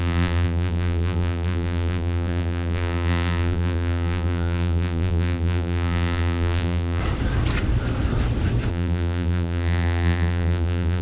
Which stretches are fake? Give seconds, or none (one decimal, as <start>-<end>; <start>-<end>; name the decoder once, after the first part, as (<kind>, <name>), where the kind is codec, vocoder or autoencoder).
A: 0.0-7.0 (vocoder, BigVGAN v2); 8.7-11.0